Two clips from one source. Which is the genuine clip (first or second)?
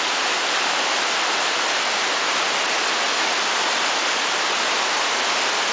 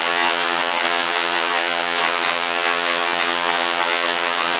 first